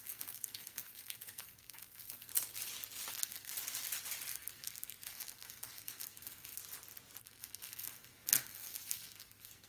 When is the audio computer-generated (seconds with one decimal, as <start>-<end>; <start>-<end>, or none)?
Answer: 0.0-2.3; 3.1-3.5; 4.3-6.6; 7.2-9.7